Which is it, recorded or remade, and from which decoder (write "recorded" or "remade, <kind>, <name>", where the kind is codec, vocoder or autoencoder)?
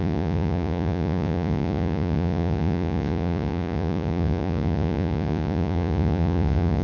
remade, vocoder, Vocos